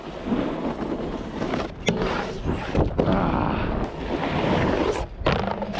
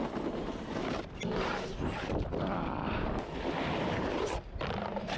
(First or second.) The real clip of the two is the first